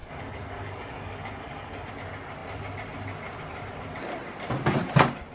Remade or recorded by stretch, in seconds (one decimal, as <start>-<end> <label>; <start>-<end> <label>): 0.0-1.9 remade; 1.9-5.3 recorded